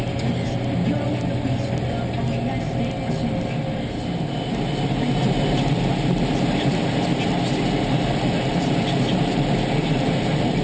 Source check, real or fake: real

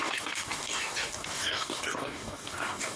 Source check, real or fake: fake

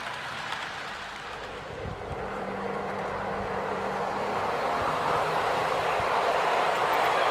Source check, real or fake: fake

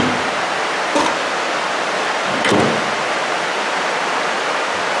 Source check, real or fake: fake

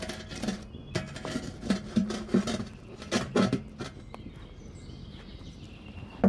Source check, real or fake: real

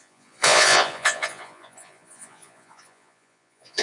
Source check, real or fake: fake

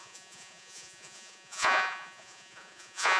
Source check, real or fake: fake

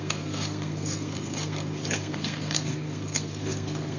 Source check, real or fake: fake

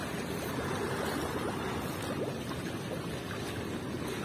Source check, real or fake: real